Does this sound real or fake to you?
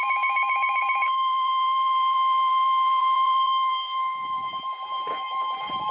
fake